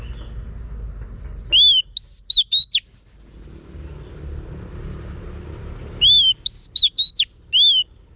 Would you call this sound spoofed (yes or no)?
no